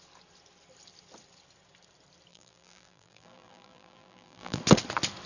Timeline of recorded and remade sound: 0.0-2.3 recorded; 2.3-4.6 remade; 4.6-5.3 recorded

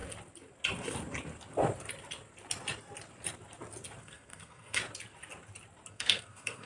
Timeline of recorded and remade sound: 0.0-4.0 recorded; 4.0-4.8 remade; 4.8-5.9 recorded; 5.9-6.7 remade

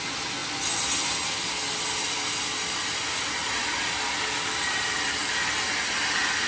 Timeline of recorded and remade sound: 0.0-6.5 recorded

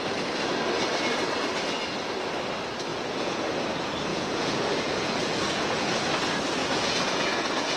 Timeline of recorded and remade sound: 0.0-2.9 recorded; 2.9-3.5 remade; 3.5-4.1 recorded; 4.1-5.9 remade; 5.9-6.6 recorded; 6.6-7.8 remade

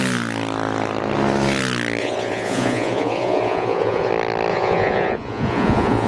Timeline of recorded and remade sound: 0.0-2.0 recorded; 2.0-4.1 remade; 4.1-4.5 recorded; 4.5-6.1 remade